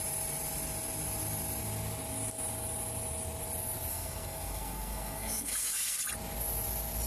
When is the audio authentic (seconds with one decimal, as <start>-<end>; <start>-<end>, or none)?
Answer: 0.0-3.9; 6.0-7.1